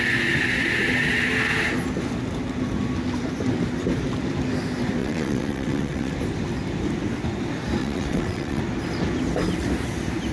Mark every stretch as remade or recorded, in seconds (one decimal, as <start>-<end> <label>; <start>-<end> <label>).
0.0-5.0 recorded; 5.0-6.1 remade; 6.1-7.8 recorded; 7.8-8.6 remade; 8.6-10.3 recorded